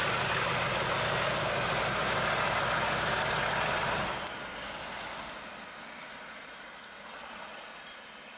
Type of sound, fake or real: real